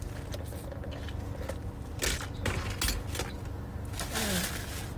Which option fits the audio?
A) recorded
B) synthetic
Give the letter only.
A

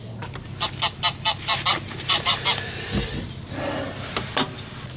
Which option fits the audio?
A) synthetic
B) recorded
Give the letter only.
B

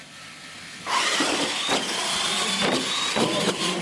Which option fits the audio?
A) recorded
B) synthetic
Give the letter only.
A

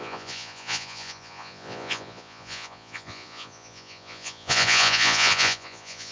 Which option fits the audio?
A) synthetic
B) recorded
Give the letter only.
A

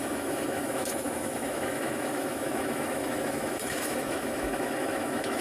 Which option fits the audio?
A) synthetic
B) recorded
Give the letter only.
A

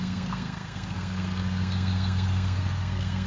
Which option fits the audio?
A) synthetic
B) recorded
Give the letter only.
A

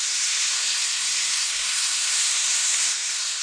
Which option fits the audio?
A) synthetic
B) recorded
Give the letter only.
A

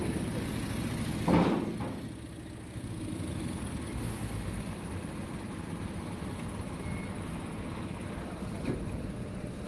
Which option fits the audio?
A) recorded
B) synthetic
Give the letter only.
A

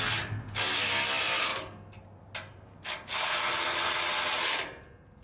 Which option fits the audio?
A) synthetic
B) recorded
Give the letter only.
B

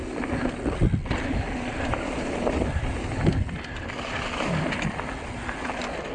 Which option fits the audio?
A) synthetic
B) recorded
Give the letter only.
B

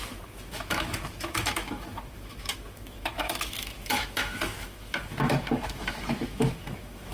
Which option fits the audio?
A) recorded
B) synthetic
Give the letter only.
B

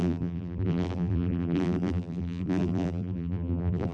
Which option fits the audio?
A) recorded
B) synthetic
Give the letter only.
B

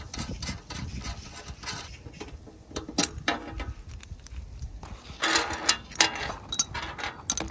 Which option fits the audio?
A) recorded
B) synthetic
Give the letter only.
A